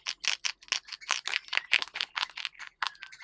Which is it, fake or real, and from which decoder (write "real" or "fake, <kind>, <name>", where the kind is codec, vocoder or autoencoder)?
real